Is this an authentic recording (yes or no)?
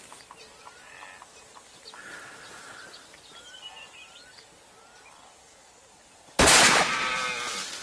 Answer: yes